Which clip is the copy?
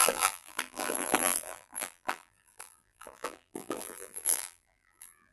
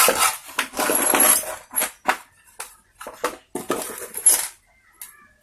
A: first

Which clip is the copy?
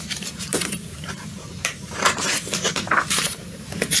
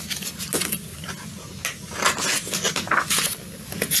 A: first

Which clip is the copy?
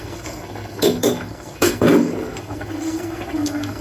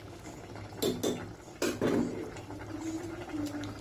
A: first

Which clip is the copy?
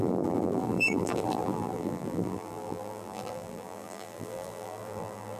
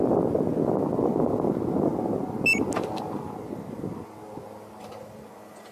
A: first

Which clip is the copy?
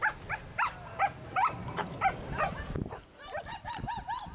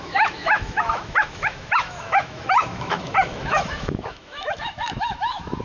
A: second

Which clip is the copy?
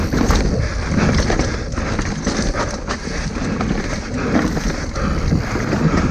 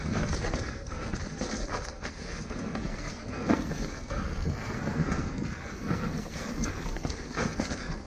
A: second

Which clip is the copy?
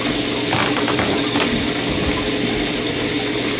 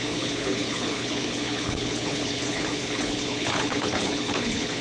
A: second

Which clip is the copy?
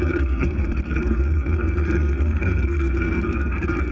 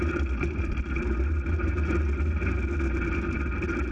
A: first